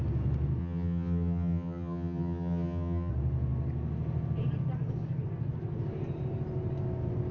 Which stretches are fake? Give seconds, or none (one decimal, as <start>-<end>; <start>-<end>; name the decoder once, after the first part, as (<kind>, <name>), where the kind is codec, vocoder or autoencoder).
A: 0.6-3.1 (vocoder, HiFi-GAN)